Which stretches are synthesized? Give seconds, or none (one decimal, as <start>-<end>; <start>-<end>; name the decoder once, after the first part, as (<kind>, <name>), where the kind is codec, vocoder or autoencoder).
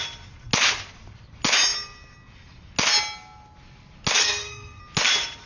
4.2-4.8 (codec, SNAC)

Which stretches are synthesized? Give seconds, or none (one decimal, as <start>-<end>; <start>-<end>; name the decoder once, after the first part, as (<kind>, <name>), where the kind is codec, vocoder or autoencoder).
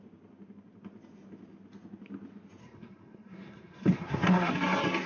2.6-4.5 (codec, SNAC)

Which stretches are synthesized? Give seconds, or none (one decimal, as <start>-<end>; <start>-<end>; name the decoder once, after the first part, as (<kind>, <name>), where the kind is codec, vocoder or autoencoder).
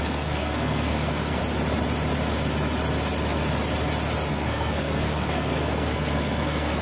0.0-1.4 (codec, SNAC); 4.3-6.8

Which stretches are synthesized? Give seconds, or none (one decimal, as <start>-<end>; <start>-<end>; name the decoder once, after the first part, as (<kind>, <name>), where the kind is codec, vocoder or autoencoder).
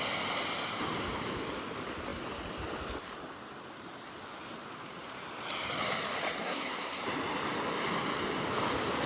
6.4-7.0 (codec, SNAC)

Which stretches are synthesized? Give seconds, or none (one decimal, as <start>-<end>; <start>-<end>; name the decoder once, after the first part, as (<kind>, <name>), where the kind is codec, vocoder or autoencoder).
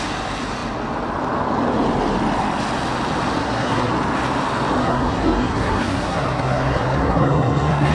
3.4-3.9 (codec, SNAC); 4.8-7.9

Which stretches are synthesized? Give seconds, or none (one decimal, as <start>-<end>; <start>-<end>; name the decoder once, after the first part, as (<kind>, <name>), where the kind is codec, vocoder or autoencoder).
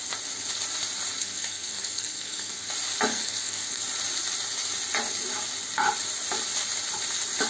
1.2-2.7 (codec, SNAC); 3.1-3.8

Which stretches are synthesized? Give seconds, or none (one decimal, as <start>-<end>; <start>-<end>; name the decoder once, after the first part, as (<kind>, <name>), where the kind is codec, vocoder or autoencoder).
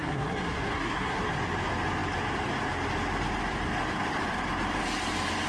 0.0-1.2 (codec, SNAC)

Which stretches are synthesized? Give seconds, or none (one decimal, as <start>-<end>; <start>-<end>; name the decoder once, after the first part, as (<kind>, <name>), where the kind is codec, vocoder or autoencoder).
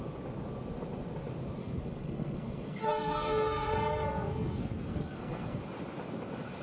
1.6-5.6 (codec, SNAC)